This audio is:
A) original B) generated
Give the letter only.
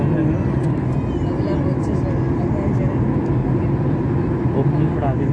A